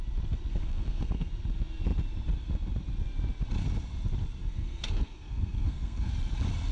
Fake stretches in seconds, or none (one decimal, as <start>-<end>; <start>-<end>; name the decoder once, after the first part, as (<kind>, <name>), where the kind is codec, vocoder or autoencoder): 0.5-1.3 (codec, SNAC); 4.4-6.1